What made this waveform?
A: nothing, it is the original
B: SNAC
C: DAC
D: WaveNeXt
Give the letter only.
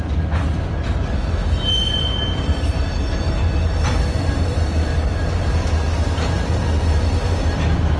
A